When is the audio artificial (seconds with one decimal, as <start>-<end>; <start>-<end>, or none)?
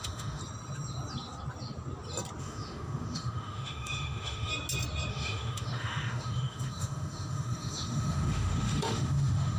0.0-0.4; 2.4-4.5; 5.1-9.6